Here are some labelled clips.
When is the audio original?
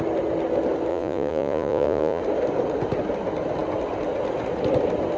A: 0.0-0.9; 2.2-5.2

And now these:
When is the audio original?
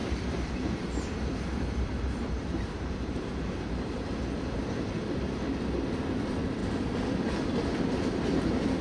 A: 4.7-8.8